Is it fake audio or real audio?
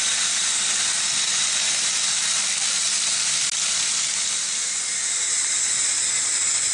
real